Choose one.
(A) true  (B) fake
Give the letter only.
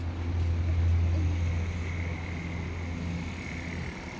A